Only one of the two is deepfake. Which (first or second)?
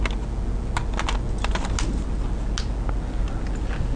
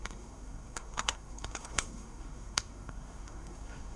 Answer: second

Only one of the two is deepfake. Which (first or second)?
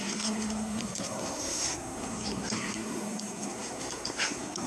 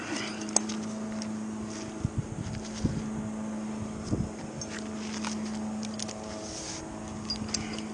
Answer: first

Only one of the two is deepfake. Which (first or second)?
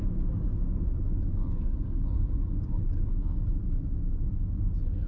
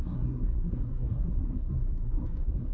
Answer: second